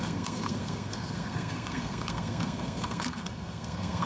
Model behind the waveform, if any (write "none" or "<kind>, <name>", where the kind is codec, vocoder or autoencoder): codec, SNAC